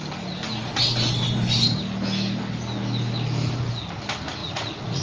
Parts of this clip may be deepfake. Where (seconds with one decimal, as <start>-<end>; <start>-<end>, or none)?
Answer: 4.4-5.0